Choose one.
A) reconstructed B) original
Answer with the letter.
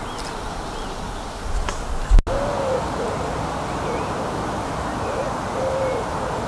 B